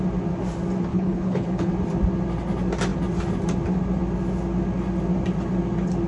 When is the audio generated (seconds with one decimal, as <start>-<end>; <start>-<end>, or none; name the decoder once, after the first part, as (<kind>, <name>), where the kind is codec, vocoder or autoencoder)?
0.9-1.7 (codec, HILCodec)